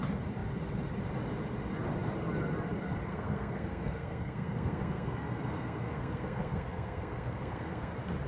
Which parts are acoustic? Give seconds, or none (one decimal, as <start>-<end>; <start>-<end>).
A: 0.0-3.1; 7.9-8.3